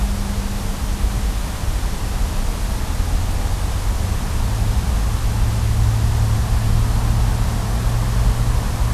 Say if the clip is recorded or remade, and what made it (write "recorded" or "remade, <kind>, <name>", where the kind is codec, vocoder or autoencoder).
recorded